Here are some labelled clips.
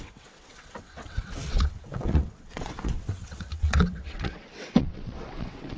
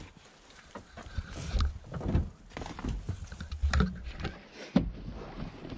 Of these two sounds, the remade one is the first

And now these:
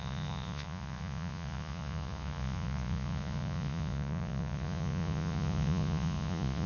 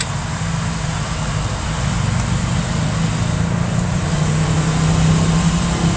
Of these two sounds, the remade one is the first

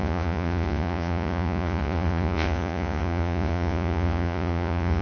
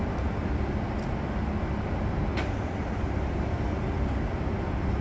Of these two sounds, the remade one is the first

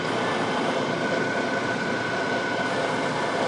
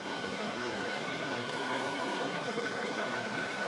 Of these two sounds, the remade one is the second